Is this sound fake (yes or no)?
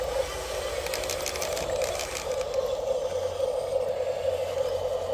no